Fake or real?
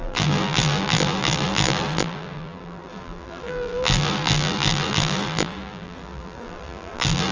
fake